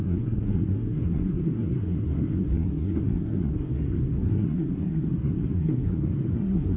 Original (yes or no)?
no